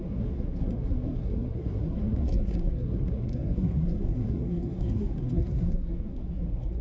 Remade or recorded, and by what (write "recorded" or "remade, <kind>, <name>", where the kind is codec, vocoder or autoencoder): remade, codec, SNAC